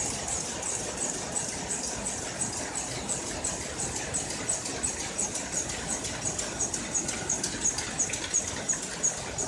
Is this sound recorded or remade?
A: recorded